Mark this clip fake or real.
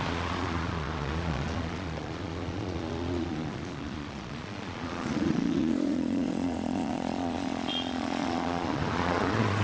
fake